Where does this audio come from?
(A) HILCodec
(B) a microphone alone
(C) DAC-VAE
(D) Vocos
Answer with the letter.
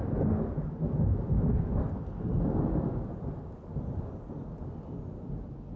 B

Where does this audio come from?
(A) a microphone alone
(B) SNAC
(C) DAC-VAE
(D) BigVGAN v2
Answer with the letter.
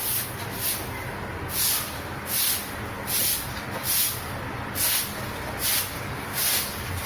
A